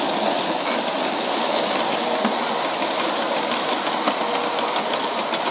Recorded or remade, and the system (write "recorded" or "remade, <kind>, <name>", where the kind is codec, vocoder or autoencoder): recorded